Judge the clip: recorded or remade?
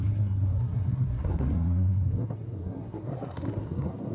remade